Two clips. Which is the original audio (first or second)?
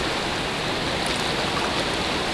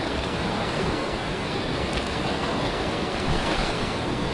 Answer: first